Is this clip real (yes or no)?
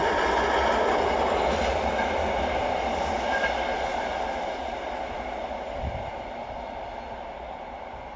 yes